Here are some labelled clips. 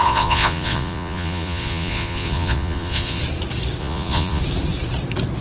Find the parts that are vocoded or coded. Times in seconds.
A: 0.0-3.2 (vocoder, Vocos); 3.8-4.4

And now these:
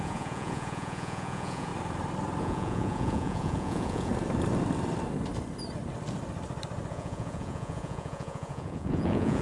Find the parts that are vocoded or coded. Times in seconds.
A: 0.0-1.7 (vocoder, Vocos); 2.4-4.1; 6.9-9.4

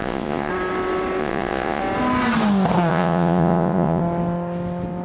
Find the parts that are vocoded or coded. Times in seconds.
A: 0.0-0.5 (vocoder, Vocos); 1.2-1.8; 2.9-4.0

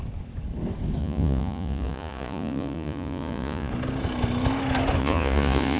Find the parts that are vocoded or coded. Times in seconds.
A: 1.0-3.7 (vocoder, Vocos); 5.0-5.8

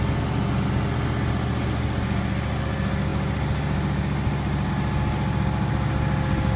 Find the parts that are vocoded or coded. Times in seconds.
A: none

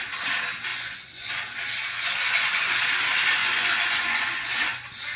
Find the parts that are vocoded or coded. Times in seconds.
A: 0.7-1.4 (vocoder, Vocos); 1.8-2.8; 3.4-5.2